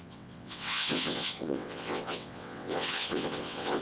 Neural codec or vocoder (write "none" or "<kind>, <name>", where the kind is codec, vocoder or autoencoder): vocoder, WaveNeXt